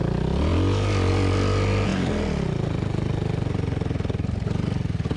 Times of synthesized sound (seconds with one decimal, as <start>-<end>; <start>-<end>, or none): none